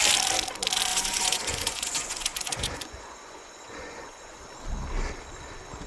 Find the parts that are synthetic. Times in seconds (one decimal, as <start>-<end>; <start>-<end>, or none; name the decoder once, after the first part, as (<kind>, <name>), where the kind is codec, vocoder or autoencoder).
0.9-4.4 (vocoder, Vocos)